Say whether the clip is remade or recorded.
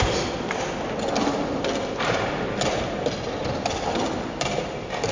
recorded